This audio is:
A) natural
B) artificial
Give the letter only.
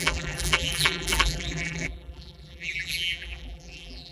B